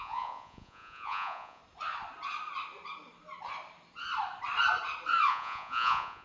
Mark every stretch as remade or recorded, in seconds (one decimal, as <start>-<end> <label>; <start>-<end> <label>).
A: 0.0-1.6 remade; 1.6-5.3 recorded; 5.3-6.2 remade